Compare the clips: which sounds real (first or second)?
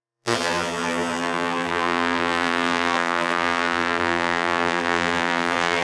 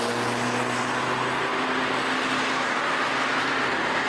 second